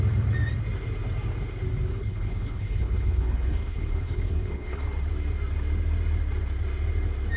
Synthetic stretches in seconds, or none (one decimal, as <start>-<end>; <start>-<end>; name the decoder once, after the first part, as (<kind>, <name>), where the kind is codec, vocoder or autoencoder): 1.9-4.8 (codec, HILCodec)